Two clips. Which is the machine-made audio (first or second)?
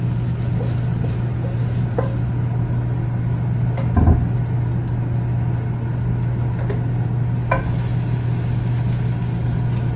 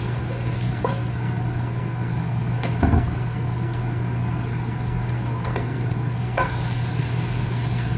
second